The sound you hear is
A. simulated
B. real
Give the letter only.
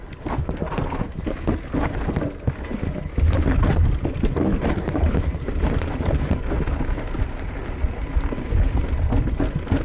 B